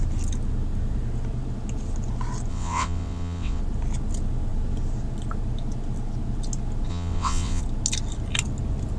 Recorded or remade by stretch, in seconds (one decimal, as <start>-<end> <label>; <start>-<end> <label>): 0.0-2.5 recorded; 2.5-3.6 remade; 3.6-6.9 recorded; 6.9-7.6 remade; 7.6-9.0 recorded